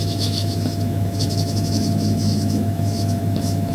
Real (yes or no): no